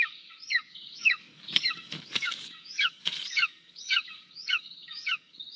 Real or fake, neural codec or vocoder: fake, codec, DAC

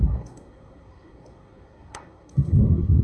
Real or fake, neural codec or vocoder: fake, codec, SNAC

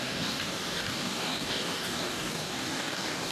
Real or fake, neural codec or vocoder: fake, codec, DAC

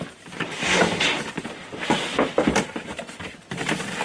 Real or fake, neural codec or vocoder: real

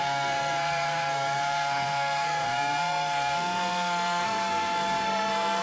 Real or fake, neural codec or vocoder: fake, codec, SNAC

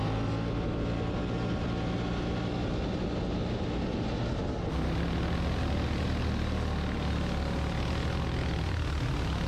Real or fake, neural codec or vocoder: real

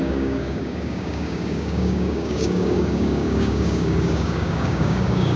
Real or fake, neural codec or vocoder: fake, codec, DAC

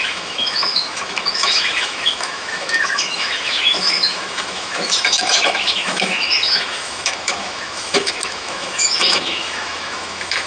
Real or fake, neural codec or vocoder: fake, autoencoder, DAC-VAE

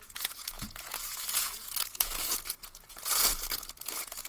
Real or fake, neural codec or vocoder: fake, vocoder, Vocos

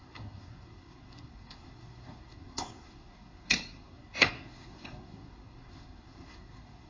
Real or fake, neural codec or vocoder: fake, codec, SNAC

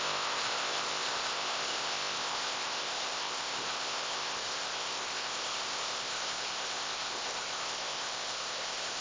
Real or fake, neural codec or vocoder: fake, codec, ZipCodec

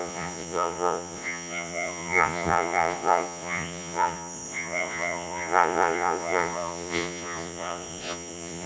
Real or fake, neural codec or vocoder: fake, vocoder, Vocos